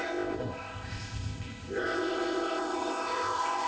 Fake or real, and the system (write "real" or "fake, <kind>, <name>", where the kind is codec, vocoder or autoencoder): fake, codec, ZipCodec